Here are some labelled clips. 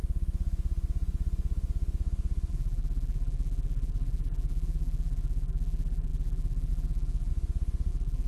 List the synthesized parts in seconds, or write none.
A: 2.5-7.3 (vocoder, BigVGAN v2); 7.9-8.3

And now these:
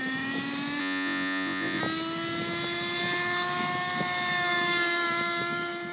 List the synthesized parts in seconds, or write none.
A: 0.8-1.8 (vocoder, Vocos)

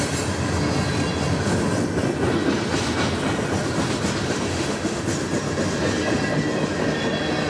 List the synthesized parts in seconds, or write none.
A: 4.5-5.0 (autoencoder, DAC-VAE)

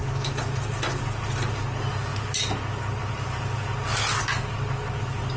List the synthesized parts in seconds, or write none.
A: none